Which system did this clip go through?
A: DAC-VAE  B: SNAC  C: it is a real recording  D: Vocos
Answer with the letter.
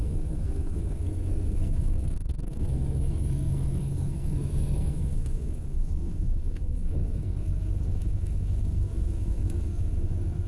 B